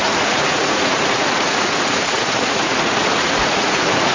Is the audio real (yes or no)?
no